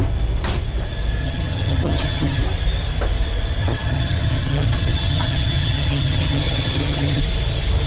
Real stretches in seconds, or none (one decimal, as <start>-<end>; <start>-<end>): 0.0-1.2; 2.4-3.6; 7.2-7.9